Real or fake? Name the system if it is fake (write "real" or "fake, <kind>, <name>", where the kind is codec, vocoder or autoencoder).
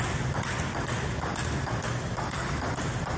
fake, vocoder, BigVGAN v2